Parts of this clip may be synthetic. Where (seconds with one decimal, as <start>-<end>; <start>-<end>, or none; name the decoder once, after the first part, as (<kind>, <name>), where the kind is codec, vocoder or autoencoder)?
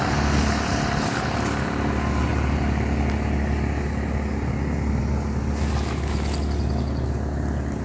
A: none